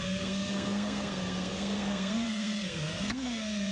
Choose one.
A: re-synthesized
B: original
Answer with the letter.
A